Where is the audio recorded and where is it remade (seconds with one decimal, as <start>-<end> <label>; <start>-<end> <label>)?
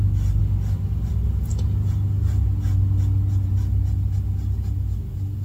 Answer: 0.0-5.4 recorded